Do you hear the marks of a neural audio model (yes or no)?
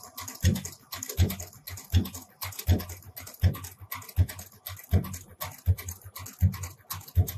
no